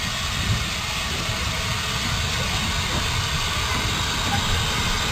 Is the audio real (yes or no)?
yes